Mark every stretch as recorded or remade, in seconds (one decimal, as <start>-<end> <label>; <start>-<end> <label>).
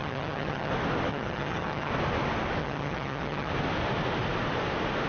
0.0-0.7 remade; 0.7-1.1 recorded; 1.1-1.9 remade; 1.9-2.6 recorded; 2.6-3.5 remade; 3.5-5.1 recorded